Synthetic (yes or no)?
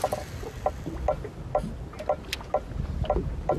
no